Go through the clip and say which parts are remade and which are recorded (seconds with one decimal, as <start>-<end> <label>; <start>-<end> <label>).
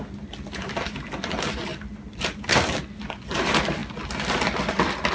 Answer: 0.0-5.1 recorded